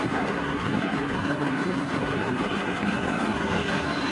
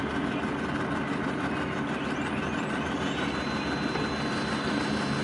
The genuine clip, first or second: second